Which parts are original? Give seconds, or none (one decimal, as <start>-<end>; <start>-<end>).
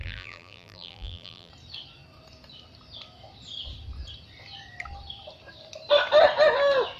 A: 1.5-7.0